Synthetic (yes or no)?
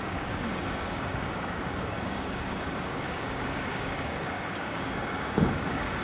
yes